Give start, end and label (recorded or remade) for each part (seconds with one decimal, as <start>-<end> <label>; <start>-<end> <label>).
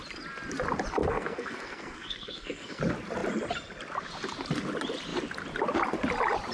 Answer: 0.0-1.0 recorded; 1.0-2.8 remade; 2.8-6.5 recorded